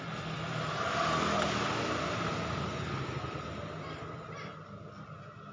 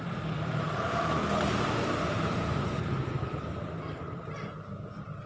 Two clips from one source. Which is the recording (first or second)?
first